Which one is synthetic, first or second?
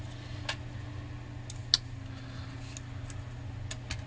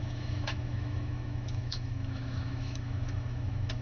second